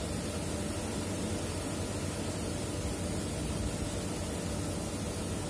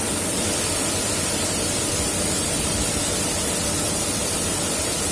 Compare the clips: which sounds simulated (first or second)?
second